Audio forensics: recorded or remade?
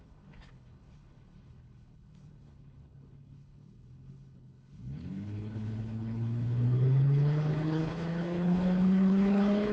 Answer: remade